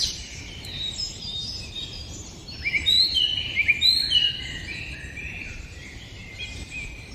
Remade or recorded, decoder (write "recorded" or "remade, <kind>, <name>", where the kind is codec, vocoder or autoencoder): remade, vocoder, BigVGAN v2